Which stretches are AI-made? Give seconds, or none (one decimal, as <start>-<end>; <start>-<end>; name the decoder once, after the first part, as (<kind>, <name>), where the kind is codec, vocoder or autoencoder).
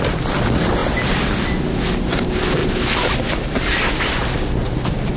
none